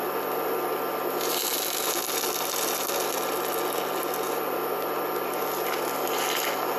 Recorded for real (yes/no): yes